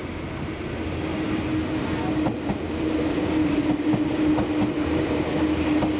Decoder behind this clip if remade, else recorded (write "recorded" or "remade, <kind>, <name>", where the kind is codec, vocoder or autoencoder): recorded